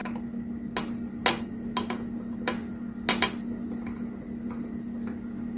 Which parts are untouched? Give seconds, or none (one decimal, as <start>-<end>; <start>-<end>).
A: 0.0-5.6